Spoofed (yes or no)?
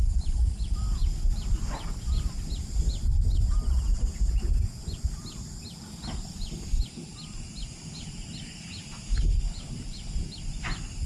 no